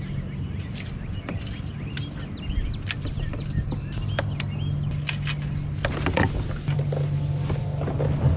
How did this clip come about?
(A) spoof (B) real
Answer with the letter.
B